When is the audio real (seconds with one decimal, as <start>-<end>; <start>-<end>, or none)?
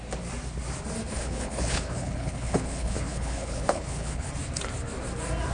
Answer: 0.0-1.1; 4.3-5.5